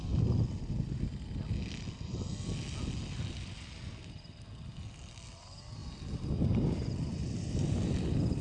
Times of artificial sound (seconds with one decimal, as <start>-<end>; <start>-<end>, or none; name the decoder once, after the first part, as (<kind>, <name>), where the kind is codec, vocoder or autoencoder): 7.1-8.4 (vocoder, BigVGAN v2)